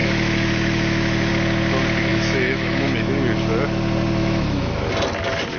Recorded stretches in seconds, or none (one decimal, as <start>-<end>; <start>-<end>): 1.3-2.1; 3.1-4.2; 4.9-5.6